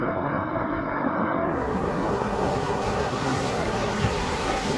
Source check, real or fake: fake